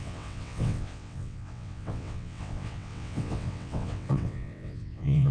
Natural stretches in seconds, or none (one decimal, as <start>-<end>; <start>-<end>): none